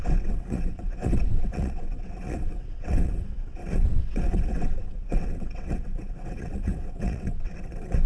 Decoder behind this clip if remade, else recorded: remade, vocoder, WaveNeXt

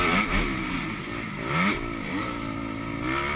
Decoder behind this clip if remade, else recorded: recorded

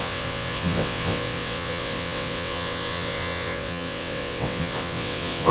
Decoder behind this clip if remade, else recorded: remade, vocoder, WaveNeXt